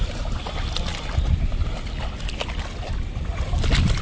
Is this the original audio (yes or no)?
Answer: yes